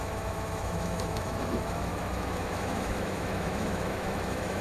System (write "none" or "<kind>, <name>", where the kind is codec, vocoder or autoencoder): autoencoder, DAC-VAE